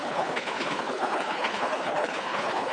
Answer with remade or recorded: remade